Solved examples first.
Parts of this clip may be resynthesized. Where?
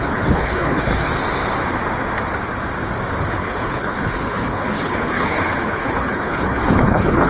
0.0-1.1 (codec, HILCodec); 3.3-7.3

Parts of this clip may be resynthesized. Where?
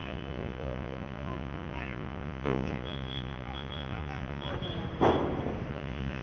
0.0-4.5 (vocoder, Vocos); 5.7-6.2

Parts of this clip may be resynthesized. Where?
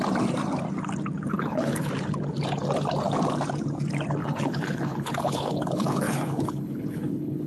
1.3-1.9 (codec, HILCodec); 4.2-7.5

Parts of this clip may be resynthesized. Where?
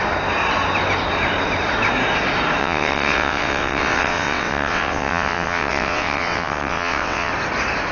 2.6-7.3 (vocoder, WaveNeXt)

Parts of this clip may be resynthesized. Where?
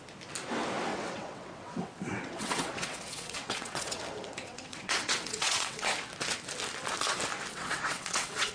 0.9-4.0 (vocoder, WaveNeXt); 4.4-5.9; 7.5-8.5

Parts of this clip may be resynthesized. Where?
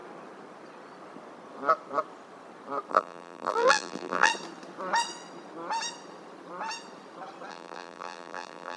2.9-4.3 (vocoder, BigVGAN v2); 7.5-8.8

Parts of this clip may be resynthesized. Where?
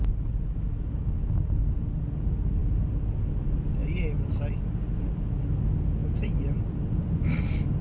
none